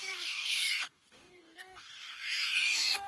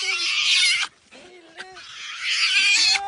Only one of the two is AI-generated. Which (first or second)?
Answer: first